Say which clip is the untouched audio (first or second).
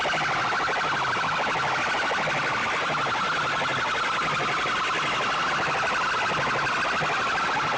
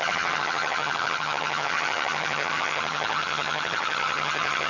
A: first